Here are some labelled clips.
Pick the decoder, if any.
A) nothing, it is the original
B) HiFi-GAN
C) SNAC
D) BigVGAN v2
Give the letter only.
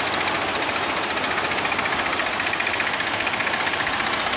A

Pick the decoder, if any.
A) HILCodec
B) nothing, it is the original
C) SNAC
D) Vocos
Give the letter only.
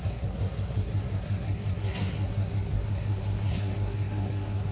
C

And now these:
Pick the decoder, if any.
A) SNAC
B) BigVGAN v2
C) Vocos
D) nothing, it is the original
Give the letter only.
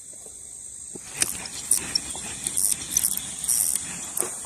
D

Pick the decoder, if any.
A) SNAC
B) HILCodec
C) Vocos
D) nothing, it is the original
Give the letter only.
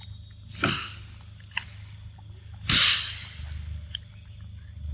D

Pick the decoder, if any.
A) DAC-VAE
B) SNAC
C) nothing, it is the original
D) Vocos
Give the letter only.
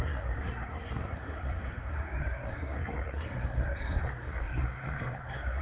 B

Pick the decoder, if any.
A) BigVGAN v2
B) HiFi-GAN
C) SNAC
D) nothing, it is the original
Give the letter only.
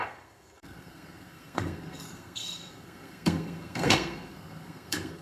C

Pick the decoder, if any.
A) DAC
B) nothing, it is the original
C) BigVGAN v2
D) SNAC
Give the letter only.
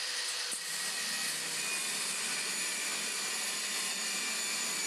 B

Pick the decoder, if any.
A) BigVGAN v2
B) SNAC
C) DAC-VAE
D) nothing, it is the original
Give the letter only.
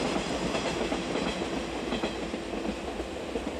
D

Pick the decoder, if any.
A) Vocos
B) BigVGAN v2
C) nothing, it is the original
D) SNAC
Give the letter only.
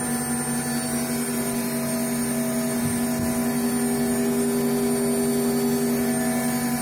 C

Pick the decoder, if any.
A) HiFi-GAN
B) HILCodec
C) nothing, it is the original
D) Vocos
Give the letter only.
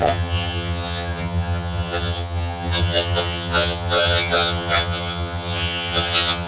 A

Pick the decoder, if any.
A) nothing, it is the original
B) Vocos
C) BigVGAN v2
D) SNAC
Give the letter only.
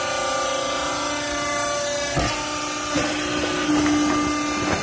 A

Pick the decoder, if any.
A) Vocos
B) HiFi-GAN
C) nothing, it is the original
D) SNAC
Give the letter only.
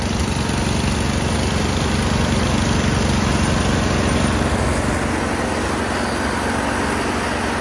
C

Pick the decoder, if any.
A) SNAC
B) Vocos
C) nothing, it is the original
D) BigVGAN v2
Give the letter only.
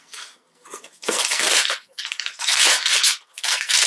A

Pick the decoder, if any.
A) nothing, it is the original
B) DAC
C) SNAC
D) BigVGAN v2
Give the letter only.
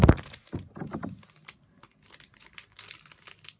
A